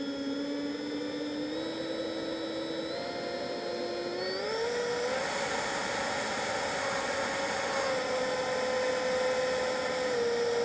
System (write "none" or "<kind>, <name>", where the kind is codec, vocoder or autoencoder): none